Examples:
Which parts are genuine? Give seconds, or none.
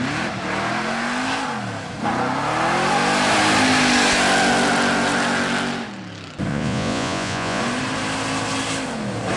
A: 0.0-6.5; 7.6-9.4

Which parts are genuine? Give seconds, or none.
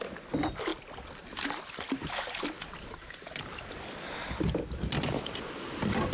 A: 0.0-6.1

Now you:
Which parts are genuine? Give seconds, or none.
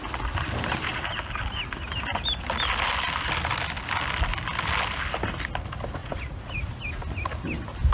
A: 0.0-6.0; 6.7-7.9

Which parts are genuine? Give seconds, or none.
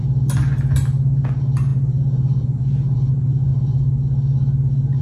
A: 0.0-1.7; 3.1-5.0